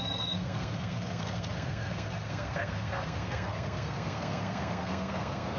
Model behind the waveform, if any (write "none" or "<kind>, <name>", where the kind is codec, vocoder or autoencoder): codec, SNAC